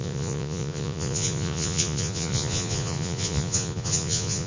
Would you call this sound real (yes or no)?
no